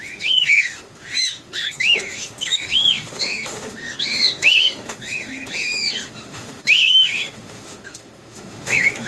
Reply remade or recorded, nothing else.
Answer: remade